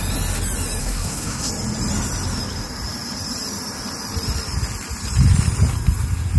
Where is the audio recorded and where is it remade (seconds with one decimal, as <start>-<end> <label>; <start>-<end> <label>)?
0.0-0.8 recorded; 0.8-1.5 remade; 1.5-6.4 recorded